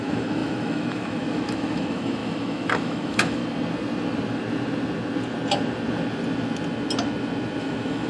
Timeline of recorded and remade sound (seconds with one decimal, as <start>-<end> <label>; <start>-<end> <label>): 0.0-3.4 remade; 3.4-7.6 recorded; 7.6-8.1 remade